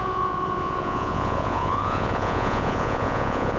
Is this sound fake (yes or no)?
yes